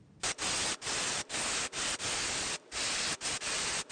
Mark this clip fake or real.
real